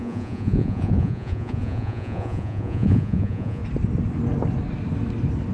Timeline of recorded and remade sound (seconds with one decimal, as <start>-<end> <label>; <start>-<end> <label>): 0.0-3.6 remade; 3.6-5.5 recorded